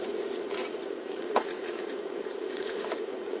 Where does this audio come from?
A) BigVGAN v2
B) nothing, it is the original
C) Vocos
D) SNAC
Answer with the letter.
C